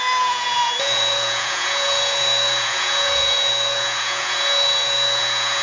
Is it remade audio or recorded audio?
remade